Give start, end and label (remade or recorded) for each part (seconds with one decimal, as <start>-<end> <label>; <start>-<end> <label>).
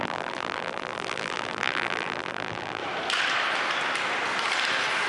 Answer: 0.0-2.8 remade; 2.8-5.1 recorded